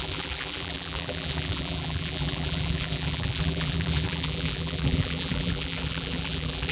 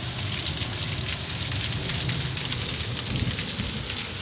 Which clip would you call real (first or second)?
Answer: second